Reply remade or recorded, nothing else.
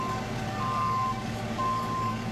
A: remade